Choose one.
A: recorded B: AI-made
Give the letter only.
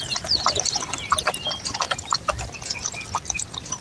A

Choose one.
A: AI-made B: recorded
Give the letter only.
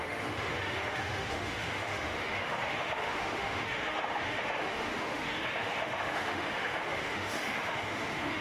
A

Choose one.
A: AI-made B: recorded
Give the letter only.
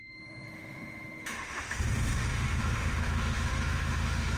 A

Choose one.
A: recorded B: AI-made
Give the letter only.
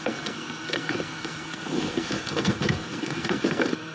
B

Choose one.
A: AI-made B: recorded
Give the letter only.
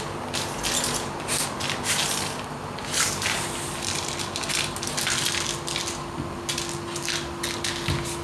B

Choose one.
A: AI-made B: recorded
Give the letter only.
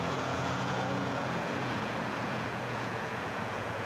A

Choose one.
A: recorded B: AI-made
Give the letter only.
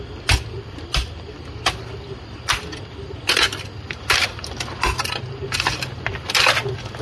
A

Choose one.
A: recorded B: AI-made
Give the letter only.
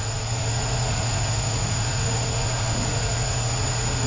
B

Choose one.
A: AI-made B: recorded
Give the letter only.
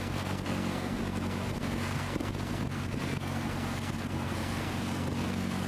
A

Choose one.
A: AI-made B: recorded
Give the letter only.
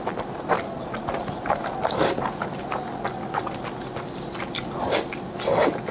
B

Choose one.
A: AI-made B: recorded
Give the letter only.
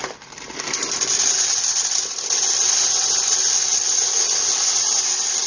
B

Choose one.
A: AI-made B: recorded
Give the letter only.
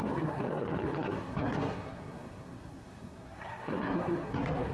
A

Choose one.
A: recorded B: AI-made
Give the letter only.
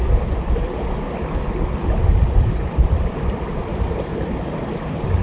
A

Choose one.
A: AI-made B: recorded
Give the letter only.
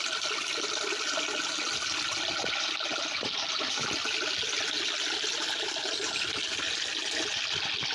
B